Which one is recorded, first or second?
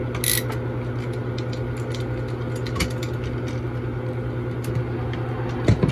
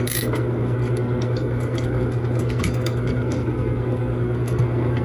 first